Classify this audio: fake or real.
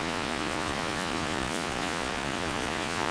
fake